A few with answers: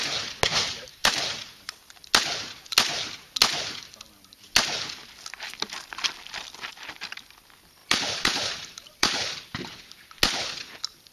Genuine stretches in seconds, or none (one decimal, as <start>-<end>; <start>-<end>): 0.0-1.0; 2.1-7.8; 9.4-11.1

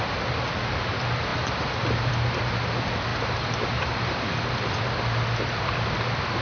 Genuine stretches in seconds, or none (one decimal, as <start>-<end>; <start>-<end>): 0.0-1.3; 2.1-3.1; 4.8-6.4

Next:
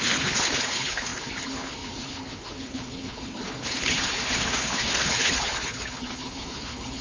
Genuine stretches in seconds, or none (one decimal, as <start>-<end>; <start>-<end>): none

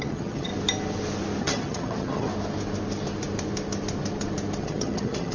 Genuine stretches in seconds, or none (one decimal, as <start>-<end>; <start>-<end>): 0.5-1.4; 2.3-4.6

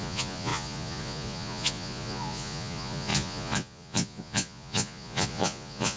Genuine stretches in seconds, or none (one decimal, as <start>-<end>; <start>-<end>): none

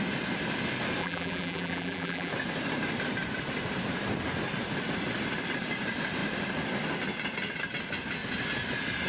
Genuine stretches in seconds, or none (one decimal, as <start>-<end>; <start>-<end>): 0.0-1.0; 2.3-9.1